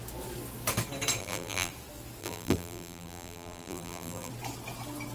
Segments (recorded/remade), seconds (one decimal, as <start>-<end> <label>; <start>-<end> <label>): 0.0-1.2 recorded; 1.2-1.7 remade; 1.7-2.2 recorded; 2.2-4.3 remade; 4.3-5.1 recorded